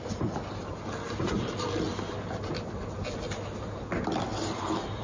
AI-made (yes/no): no